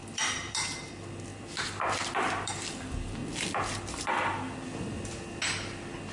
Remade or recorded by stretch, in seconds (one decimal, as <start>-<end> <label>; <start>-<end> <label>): 0.0-6.1 recorded